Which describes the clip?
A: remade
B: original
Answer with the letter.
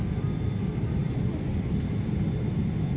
B